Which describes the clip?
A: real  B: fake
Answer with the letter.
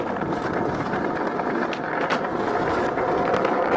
A